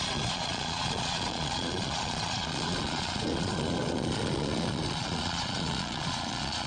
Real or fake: fake